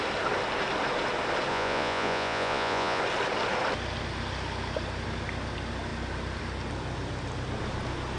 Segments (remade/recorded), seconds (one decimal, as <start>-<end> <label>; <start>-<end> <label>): 0.0-1.5 recorded; 1.5-3.0 remade; 3.0-8.2 recorded